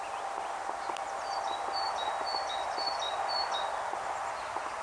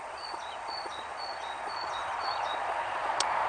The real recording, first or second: first